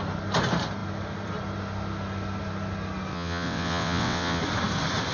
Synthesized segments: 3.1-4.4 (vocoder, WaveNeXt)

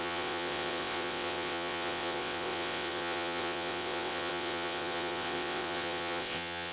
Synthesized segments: 0.0-6.7 (vocoder, WaveNeXt)